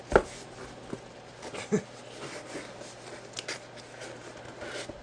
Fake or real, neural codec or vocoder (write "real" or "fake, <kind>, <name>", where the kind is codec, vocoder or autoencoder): real